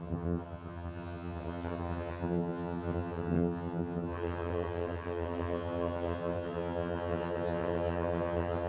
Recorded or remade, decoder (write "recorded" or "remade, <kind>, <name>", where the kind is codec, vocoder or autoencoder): remade, vocoder, HiFi-GAN